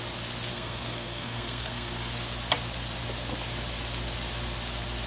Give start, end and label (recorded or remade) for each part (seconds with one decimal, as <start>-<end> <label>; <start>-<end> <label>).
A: 0.0-0.5 recorded; 0.5-2.1 remade; 2.1-5.1 recorded